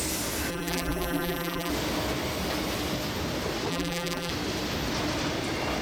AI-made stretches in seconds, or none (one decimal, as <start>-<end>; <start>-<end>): 0.5-1.7; 3.7-4.3